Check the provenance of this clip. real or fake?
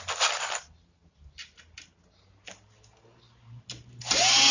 real